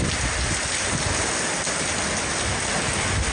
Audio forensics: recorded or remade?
recorded